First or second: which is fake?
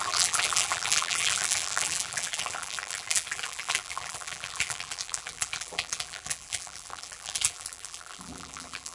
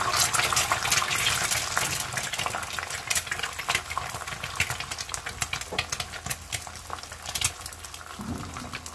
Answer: first